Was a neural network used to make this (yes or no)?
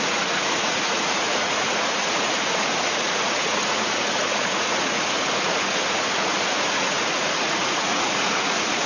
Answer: yes